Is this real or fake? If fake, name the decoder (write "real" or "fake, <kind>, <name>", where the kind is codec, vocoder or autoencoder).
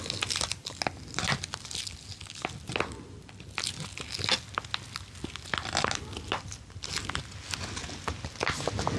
real